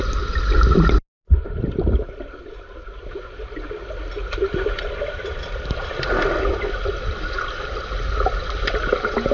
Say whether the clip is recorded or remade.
recorded